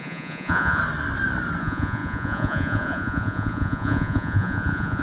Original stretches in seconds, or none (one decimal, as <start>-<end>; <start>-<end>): 0.8-1.6